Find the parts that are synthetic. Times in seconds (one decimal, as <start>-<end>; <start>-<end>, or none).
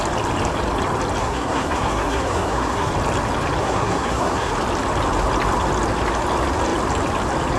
1.2-2.9; 3.6-4.5